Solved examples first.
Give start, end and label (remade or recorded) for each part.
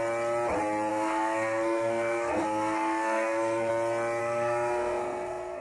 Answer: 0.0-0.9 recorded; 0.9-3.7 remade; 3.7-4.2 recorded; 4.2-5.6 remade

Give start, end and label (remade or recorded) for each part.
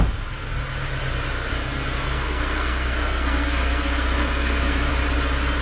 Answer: 0.0-1.5 recorded; 1.5-4.9 remade; 4.9-5.6 recorded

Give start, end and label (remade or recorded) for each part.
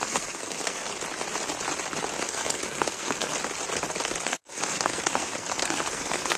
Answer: 0.0-0.9 remade; 0.9-2.2 recorded; 2.2-3.3 remade; 3.3-4.2 recorded; 4.2-6.4 remade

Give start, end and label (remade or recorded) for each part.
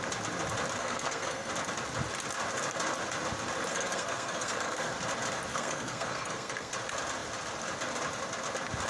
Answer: 0.0-0.8 recorded; 0.8-1.5 remade; 1.5-3.7 recorded; 3.7-4.9 remade; 4.9-5.5 recorded; 5.5-6.7 remade; 6.7-8.9 recorded